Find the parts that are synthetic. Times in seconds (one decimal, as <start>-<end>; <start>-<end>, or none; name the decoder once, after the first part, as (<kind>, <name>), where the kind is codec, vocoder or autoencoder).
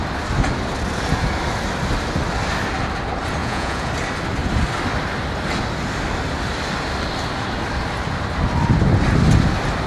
3.4-3.9 (vocoder, Vocos)